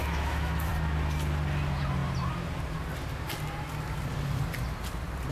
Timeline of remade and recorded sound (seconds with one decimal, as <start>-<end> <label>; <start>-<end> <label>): 0.0-0.7 remade; 0.7-5.3 recorded